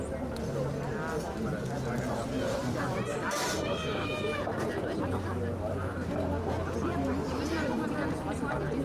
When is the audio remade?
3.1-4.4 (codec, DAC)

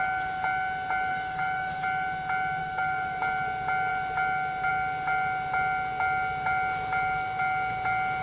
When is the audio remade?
1.1-1.8 (codec, DAC); 2.6-3.2

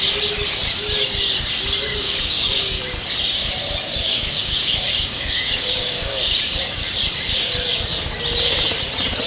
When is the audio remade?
1.9-2.8 (codec, DAC); 4.1-6.4

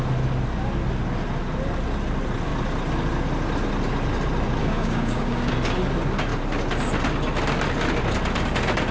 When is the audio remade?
4.6-5.5 (codec, DAC)

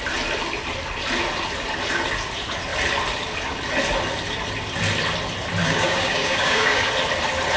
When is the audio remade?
5.6-6.9 (codec, DAC)

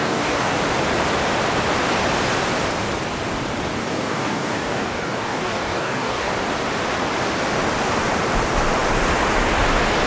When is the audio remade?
0.0-0.5 (codec, DAC); 3.8-6.3